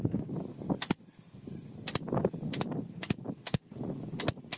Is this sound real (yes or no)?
yes